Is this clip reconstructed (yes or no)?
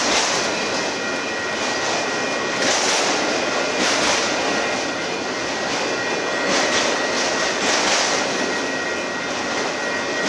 no